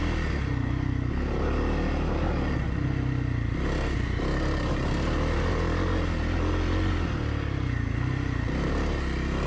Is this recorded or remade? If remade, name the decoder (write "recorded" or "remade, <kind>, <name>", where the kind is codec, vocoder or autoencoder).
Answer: recorded